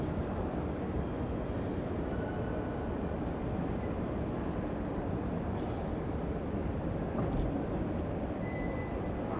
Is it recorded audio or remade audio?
recorded